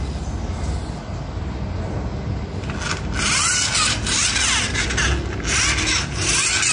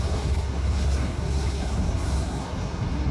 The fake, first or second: second